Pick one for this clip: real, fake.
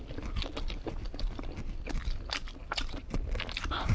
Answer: real